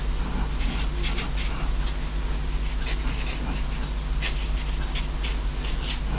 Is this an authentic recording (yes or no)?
yes